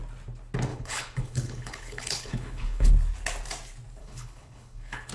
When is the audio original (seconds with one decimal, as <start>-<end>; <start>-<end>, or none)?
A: 0.0-0.7; 2.9-4.0

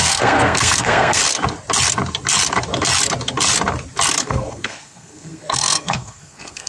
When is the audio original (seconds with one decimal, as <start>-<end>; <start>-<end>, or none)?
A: 1.2-4.2

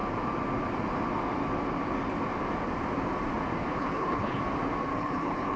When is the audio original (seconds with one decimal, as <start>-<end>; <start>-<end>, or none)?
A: 0.0-3.8; 4.4-4.9

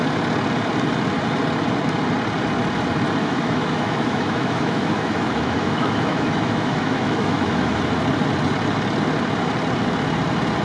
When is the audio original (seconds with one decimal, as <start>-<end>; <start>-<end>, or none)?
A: 0.0-3.2; 7.8-10.6

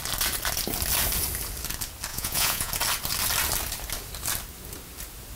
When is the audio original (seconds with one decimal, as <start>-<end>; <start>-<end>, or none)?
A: 0.0-2.1; 2.7-5.4

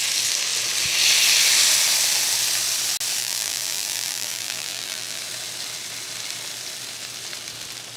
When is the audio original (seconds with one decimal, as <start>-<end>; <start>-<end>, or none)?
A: 0.0-3.2; 5.2-8.0